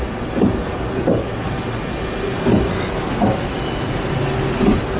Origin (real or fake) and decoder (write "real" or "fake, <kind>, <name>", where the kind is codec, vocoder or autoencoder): real